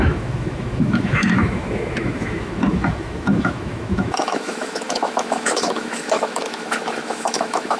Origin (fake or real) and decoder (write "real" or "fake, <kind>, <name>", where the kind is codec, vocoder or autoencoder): fake, autoencoder, DAC-VAE